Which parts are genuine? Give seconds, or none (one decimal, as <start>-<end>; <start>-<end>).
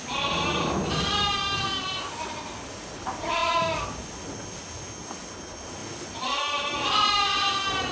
0.0-7.9